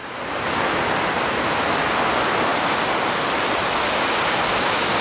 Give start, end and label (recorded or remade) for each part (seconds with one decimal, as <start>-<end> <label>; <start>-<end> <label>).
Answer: 0.0-5.0 recorded